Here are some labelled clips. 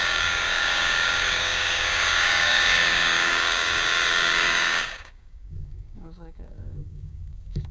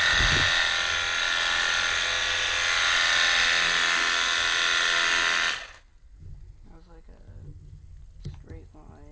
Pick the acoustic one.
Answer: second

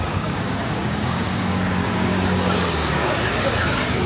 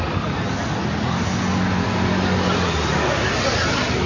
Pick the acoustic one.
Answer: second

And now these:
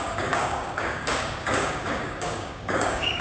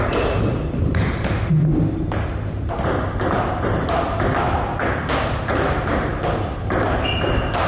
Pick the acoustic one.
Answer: second